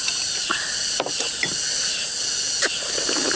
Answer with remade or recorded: recorded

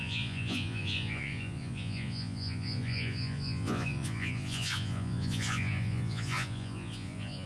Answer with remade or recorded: remade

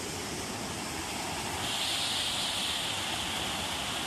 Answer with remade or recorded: recorded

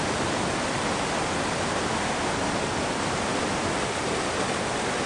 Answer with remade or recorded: recorded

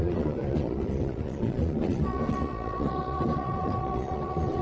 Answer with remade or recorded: remade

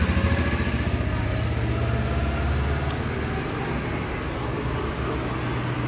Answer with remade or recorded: recorded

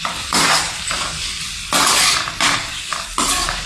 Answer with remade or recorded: recorded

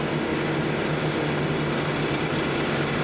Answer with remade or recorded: recorded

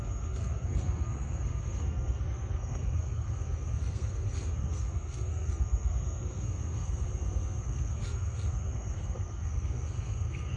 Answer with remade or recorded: remade